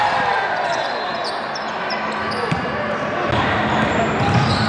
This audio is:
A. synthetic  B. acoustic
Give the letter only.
B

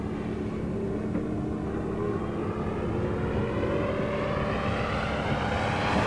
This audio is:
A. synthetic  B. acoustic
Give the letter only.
B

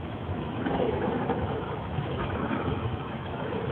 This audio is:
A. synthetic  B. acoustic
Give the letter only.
A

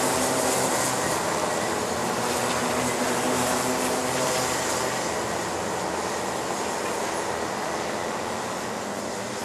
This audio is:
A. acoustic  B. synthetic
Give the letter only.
A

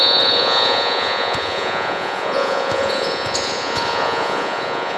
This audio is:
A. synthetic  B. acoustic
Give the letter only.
A